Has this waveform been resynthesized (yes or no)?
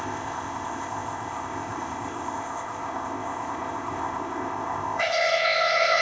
yes